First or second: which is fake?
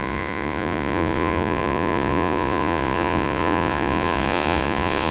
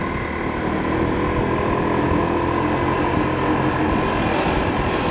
first